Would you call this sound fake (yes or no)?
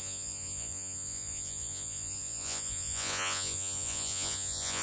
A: yes